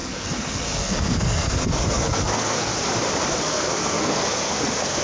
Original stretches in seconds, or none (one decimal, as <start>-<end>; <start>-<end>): 2.7-3.4